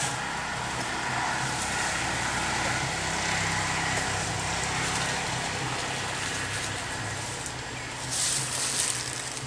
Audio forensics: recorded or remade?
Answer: recorded